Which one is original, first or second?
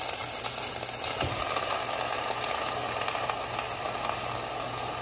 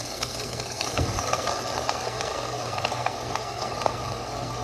first